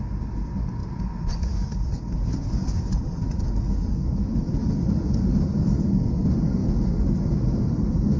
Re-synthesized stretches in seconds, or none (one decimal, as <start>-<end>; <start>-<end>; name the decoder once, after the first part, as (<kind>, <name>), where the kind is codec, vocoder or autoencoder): 4.0-4.5 (autoencoder, DAC-VAE)